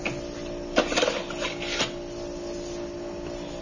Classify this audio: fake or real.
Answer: real